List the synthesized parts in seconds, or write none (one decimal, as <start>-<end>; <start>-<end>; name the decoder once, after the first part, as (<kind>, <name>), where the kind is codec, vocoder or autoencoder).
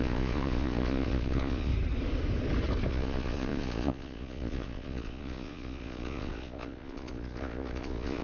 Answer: 0.0-1.7 (vocoder, Vocos); 2.9-8.2